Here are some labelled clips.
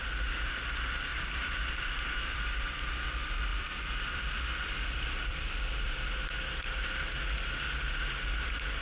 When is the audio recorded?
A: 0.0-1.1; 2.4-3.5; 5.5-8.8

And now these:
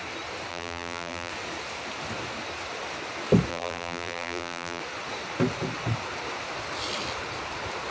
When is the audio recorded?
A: 0.0-0.5; 1.3-3.5; 4.8-7.9

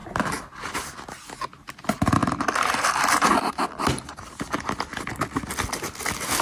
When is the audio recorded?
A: 0.6-2.2; 5.5-6.4

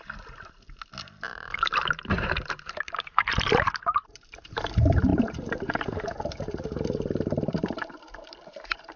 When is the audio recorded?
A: 0.0-1.3; 4.6-5.1